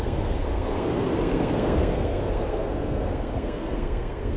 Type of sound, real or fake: fake